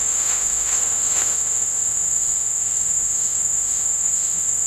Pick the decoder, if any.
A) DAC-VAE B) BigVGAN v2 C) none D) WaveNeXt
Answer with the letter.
A